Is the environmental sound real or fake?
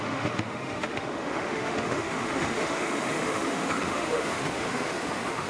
fake